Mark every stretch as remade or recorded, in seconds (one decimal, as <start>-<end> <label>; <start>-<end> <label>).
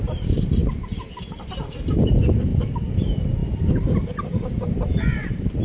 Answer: 0.0-2.5 remade; 2.5-3.0 recorded; 3.0-5.6 remade